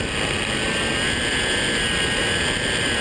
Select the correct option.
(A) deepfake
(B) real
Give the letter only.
B